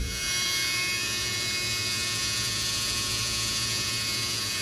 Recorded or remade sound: remade